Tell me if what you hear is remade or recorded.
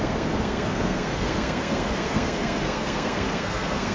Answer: remade